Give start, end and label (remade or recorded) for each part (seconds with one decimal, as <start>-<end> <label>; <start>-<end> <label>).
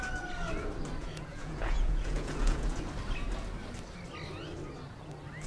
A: 0.0-1.0 recorded; 1.0-2.8 remade; 2.8-5.5 recorded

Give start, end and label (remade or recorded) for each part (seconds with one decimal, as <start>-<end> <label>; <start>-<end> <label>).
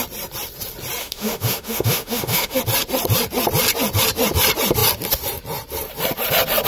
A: 0.0-1.0 recorded; 1.0-2.6 remade; 2.6-6.7 recorded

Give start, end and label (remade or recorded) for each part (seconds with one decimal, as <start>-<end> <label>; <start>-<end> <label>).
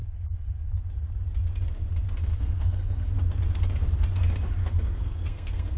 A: 0.0-2.3 recorded; 2.3-3.1 remade; 3.1-4.6 recorded; 4.6-5.8 remade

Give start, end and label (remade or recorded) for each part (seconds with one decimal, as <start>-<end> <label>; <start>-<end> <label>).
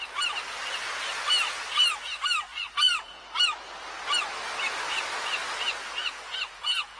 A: 0.0-2.5 recorded; 2.5-3.2 remade; 3.2-6.0 recorded; 6.0-7.0 remade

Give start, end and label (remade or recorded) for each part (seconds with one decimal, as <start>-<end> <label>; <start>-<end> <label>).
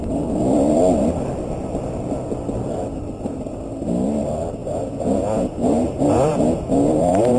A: 0.0-4.6 recorded; 4.6-7.4 remade